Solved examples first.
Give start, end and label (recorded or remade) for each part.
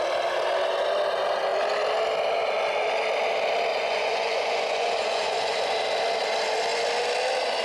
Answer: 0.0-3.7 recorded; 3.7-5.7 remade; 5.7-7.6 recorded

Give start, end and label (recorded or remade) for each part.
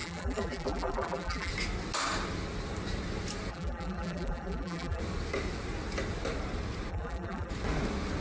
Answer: 0.0-1.5 remade; 1.5-3.5 recorded; 3.5-5.0 remade; 5.0-6.9 recorded; 6.9-7.5 remade; 7.5-8.2 recorded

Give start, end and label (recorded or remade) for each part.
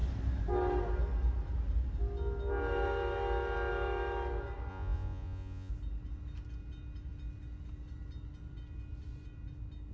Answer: 0.0-4.7 recorded; 4.7-5.7 remade; 5.7-9.9 recorded